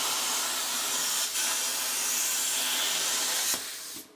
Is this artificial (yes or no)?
no